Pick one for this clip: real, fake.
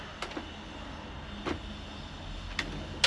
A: real